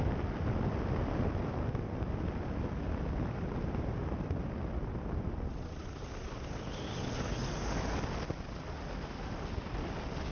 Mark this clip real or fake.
real